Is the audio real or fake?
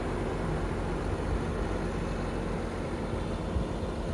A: real